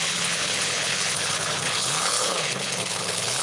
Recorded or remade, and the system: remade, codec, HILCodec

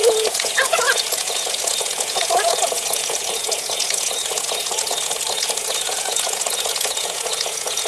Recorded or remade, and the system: remade, vocoder, Vocos